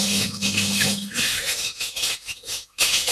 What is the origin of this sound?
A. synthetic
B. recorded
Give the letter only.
A